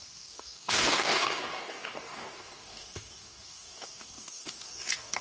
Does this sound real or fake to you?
fake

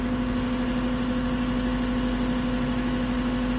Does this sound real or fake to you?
real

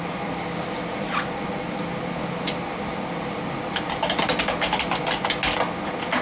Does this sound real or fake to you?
real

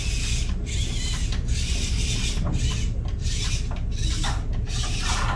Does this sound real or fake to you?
real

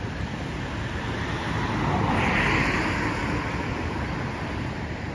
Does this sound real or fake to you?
real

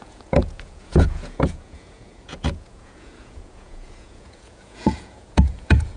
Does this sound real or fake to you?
fake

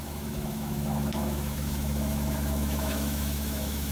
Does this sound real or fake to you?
fake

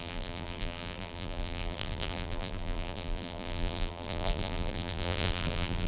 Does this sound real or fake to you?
fake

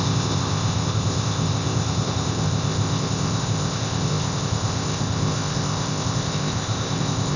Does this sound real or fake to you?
fake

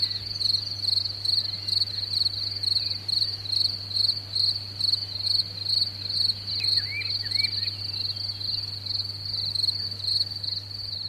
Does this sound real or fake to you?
real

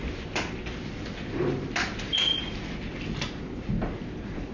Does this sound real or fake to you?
real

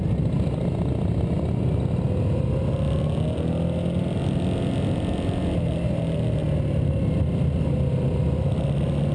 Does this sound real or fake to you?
real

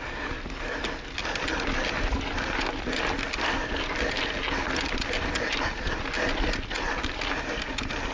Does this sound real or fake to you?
real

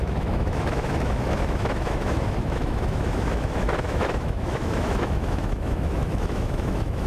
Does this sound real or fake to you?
fake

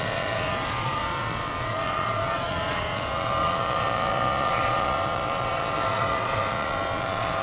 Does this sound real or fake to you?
fake